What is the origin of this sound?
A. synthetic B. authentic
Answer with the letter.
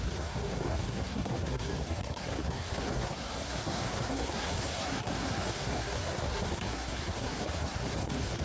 A